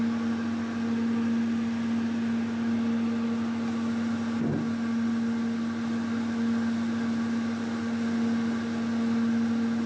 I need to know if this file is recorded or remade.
recorded